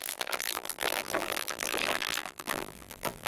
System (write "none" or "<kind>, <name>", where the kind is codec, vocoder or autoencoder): vocoder, BigVGAN v2